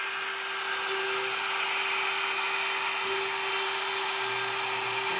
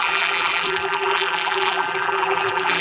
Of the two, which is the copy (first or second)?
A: second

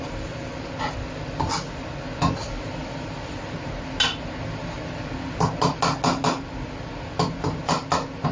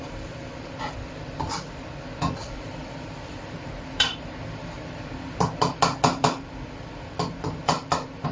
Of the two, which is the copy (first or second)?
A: second